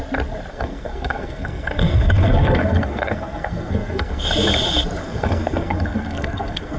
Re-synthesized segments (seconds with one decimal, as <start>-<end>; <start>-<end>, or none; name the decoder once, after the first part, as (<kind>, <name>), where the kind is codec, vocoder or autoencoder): 0.5-4.3 (codec, SNAC); 5.0-6.8